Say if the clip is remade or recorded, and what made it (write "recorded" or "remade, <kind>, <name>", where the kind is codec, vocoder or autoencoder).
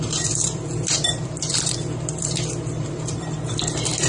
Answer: remade, vocoder, BigVGAN v2